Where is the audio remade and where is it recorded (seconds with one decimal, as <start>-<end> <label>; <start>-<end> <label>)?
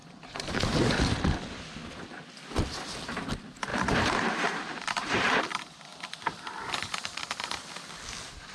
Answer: 0.0-0.8 remade; 0.8-3.7 recorded; 3.7-5.4 remade; 5.4-8.5 recorded